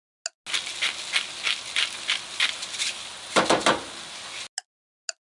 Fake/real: real